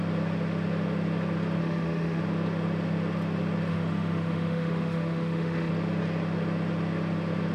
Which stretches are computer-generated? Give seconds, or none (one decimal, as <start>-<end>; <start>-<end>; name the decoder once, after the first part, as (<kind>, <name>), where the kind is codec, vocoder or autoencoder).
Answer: 1.6-2.2 (autoencoder, DAC-VAE); 3.7-5.7